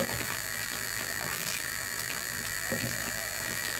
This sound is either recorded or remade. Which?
remade